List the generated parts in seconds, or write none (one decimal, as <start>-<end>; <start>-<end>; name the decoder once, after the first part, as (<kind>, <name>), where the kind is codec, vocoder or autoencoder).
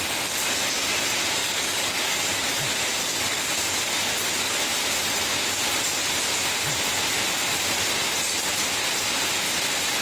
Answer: 1.4-2.2 (codec, DAC); 3.0-4.0